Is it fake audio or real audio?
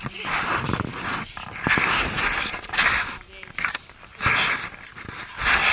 real